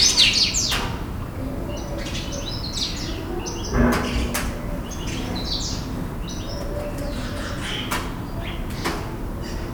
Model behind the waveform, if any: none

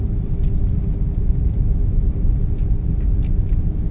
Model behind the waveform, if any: vocoder, BigVGAN v2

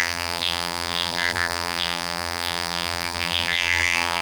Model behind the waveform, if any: vocoder, BigVGAN v2